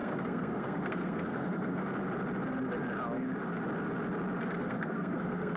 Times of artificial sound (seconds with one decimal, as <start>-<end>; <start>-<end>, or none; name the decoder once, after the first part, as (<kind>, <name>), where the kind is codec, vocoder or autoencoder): 0.0-1.8 (codec, SNAC); 4.6-5.6

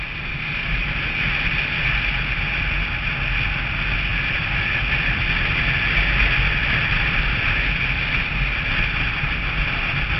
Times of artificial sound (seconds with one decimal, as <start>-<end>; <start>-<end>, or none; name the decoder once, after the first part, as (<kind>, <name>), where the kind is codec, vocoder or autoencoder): none

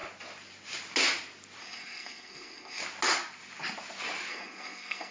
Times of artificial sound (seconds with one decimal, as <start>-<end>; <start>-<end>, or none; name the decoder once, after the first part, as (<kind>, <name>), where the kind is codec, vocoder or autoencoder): 1.6-2.8 (codec, SNAC); 4.3-5.1

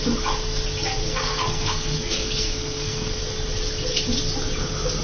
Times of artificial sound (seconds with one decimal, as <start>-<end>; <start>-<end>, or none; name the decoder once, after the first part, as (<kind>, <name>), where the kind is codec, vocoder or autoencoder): 1.0-3.2 (codec, SNAC)

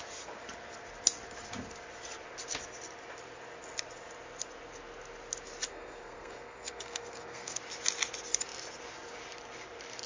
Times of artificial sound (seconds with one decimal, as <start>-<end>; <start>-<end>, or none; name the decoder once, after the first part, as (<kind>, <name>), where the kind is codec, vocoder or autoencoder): 5.7-7.6 (codec, SNAC)

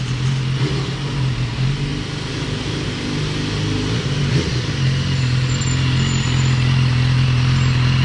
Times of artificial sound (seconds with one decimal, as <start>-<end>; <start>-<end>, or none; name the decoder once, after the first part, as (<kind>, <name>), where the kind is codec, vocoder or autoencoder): none

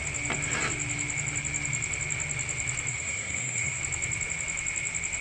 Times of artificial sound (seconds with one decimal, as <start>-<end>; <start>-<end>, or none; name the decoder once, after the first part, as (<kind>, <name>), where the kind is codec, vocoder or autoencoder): 2.9-3.8 (codec, SNAC)